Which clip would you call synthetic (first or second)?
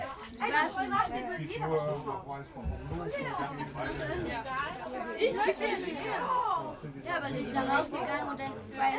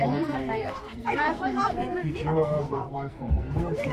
second